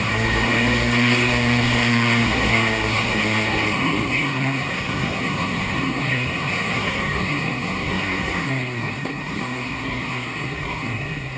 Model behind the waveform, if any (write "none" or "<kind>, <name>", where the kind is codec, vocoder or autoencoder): codec, SNAC